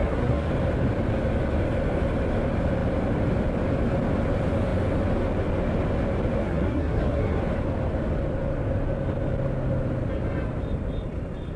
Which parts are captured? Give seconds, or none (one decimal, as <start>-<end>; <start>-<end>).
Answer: 0.5-6.4; 7.4-11.6